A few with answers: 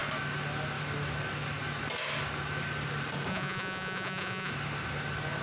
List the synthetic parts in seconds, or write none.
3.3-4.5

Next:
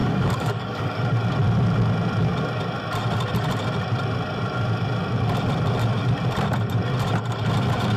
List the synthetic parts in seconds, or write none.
0.0-1.0

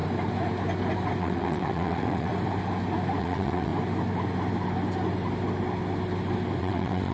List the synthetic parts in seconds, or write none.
1.2-2.3; 3.2-3.7; 6.6-7.1